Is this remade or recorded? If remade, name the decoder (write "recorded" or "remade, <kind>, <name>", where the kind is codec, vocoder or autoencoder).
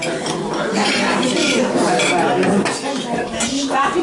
recorded